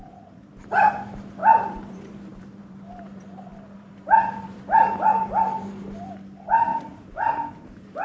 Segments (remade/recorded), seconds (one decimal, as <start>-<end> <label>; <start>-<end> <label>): 0.0-8.0 remade